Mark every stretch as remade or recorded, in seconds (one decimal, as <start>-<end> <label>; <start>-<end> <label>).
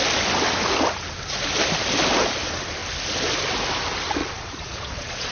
0.0-4.2 recorded; 4.2-5.3 remade